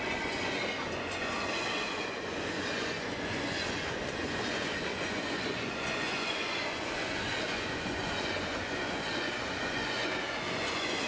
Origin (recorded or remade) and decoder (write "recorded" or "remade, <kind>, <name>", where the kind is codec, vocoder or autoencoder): remade, vocoder, Vocos